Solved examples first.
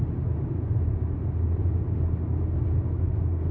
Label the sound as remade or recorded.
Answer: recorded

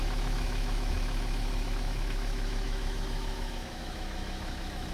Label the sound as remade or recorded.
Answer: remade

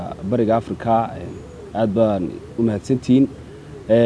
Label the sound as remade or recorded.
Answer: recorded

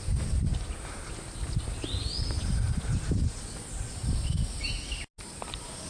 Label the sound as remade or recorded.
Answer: recorded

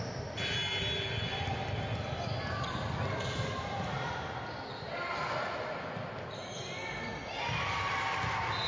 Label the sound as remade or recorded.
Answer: recorded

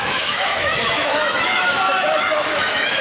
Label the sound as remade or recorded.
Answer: remade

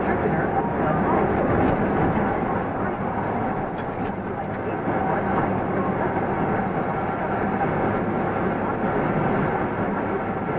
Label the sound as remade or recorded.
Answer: recorded